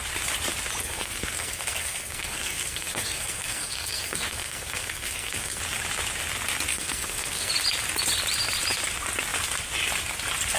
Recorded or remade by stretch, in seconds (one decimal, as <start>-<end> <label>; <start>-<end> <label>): 0.0-0.8 recorded; 0.8-5.6 remade; 5.6-6.7 recorded; 6.7-7.5 remade; 7.5-10.6 recorded